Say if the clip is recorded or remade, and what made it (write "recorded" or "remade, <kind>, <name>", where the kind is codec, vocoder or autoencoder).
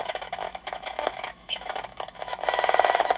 remade, autoencoder, DAC-VAE